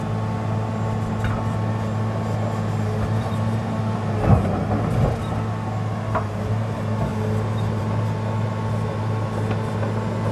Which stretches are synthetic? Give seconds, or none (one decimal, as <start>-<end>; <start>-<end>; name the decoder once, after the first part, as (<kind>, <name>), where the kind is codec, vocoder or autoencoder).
none